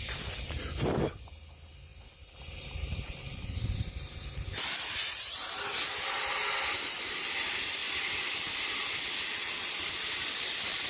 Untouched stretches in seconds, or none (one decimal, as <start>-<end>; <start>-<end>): 0.0-10.9